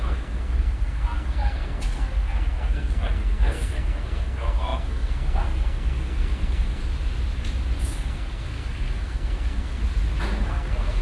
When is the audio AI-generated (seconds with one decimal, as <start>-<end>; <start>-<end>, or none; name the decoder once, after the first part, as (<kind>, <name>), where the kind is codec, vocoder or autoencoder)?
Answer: 0.0-6.8 (codec, SNAC); 7.8-9.8; 10.4-11.0